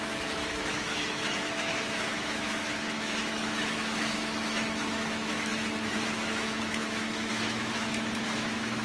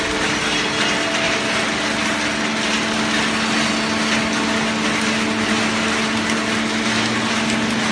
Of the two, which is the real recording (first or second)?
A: second